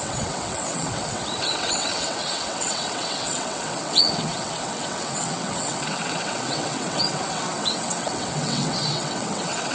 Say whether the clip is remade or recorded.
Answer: remade